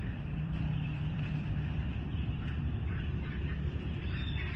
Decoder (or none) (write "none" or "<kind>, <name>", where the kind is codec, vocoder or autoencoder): vocoder, BigVGAN v2